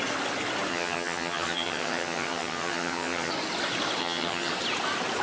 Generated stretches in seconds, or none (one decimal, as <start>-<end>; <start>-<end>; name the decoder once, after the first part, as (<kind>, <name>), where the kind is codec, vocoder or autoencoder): 0.7-3.3 (vocoder, HiFi-GAN); 4.0-4.5

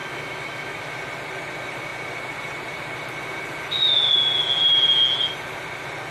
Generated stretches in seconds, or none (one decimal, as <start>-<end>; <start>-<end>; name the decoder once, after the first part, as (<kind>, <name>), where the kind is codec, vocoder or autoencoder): 0.0-0.8 (autoencoder, DAC-VAE)

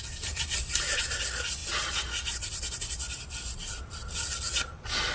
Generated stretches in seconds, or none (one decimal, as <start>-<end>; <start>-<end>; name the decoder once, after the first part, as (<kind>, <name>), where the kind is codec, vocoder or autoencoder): none

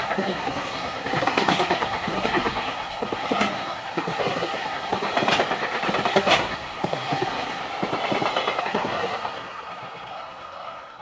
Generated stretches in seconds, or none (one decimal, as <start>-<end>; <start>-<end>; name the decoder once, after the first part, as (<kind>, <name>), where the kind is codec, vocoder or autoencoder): 0.0-5.1 (codec, SNAC); 6.1-7.6; 8.6-11.0

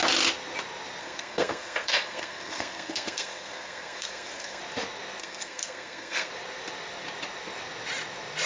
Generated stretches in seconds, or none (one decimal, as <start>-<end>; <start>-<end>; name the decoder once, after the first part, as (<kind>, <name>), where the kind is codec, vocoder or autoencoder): 1.0-4.6 (codec, SNAC); 5.2-6.3